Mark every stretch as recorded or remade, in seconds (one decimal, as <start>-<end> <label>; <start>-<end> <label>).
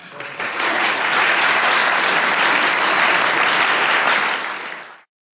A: 0.0-0.5 recorded; 0.5-1.8 remade; 1.8-5.0 recorded; 5.0-5.4 remade